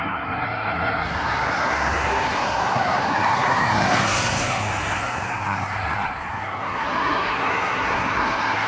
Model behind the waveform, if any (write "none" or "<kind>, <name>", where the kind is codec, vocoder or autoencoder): codec, SNAC